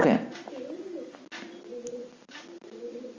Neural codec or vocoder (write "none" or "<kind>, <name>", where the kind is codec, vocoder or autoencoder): none